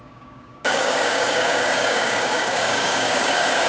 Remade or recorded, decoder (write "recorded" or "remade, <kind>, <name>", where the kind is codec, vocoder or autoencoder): remade, codec, DAC